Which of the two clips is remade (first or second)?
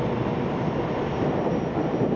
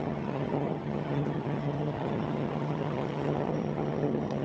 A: second